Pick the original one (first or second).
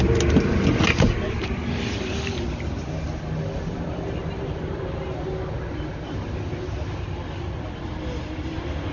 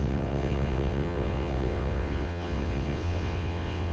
first